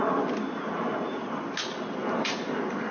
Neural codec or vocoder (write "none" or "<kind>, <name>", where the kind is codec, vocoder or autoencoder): none